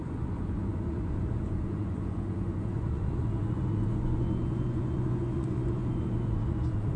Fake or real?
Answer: fake